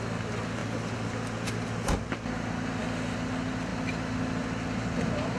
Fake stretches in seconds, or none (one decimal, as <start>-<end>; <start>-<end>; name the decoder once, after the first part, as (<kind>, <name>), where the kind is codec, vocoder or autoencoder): none